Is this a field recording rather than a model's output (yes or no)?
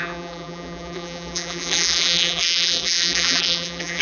no